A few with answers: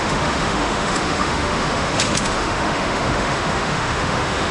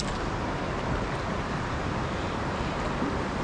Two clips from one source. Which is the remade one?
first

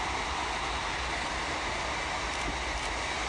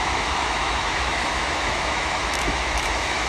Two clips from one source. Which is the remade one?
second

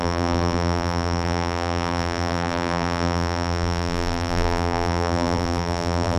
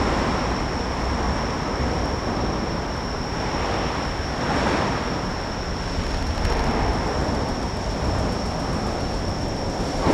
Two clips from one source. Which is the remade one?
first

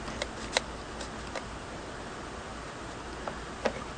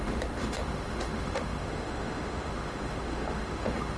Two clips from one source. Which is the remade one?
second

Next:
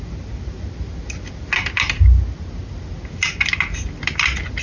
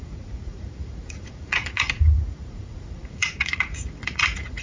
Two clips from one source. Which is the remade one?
second